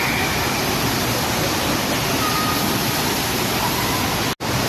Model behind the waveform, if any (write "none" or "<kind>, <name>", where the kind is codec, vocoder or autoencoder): none